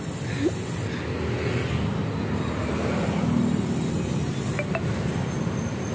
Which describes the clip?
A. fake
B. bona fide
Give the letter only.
B